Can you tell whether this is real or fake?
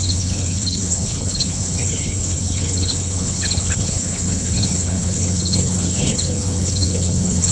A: fake